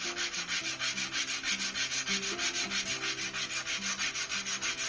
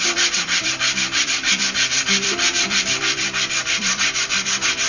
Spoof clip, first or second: second